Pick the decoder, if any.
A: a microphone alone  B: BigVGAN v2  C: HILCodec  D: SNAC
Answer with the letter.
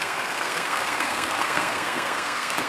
D